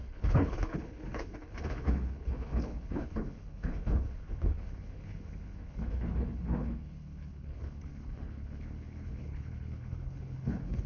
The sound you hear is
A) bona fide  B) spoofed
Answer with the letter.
B